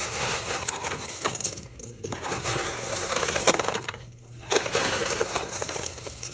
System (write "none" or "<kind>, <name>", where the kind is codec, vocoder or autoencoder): codec, SNAC